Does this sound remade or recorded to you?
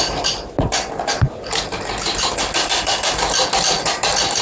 recorded